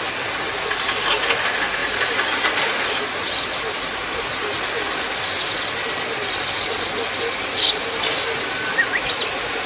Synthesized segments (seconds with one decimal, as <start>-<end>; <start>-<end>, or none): none